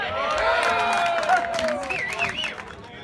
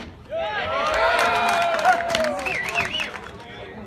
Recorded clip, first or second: first